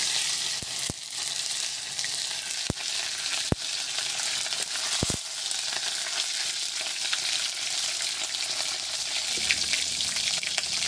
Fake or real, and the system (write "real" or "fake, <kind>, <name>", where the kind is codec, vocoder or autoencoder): real